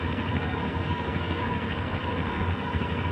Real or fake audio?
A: fake